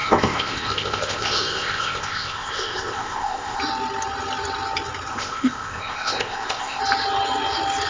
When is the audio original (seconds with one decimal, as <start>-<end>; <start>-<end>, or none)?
3.6-5.1; 6.8-7.9